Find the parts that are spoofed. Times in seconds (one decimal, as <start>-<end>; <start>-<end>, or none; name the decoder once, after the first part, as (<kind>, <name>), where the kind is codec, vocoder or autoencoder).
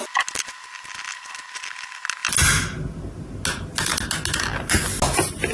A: none